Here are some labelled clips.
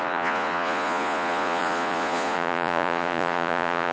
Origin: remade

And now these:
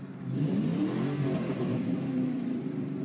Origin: remade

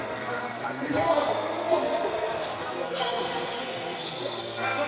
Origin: remade